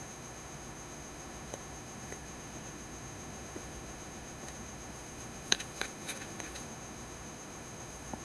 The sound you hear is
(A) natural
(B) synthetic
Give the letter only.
B